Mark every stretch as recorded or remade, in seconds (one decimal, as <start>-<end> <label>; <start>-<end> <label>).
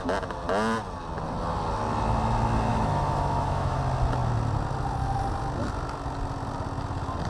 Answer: 0.0-2.7 recorded; 2.7-3.8 remade; 3.8-7.3 recorded